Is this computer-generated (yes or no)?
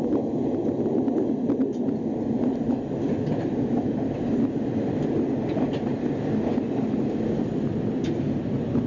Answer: no